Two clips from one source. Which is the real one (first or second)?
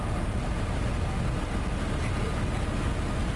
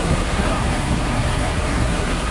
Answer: first